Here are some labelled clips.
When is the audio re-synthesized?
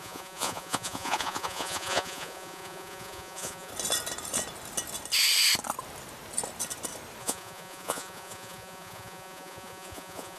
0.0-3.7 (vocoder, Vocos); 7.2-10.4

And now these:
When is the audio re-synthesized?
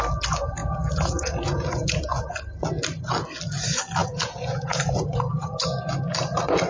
0.6-2.0 (vocoder, Vocos); 4.0-5.5